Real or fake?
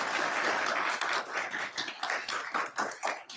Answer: real